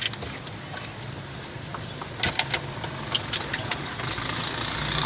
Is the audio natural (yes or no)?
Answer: yes